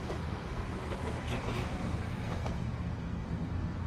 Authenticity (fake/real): fake